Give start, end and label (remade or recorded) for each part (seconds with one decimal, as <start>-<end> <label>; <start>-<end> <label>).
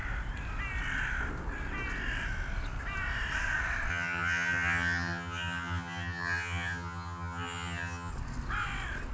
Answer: 0.0-3.9 recorded; 3.9-8.1 remade; 8.1-9.1 recorded